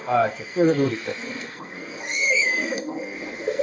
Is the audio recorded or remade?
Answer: remade